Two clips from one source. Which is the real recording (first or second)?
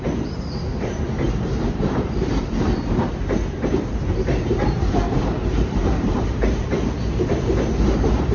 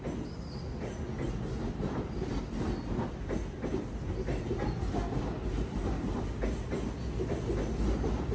second